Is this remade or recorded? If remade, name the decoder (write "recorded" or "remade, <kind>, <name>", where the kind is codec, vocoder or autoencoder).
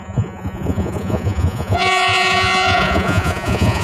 remade, vocoder, Vocos